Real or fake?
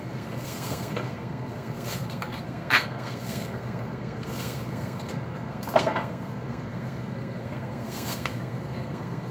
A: fake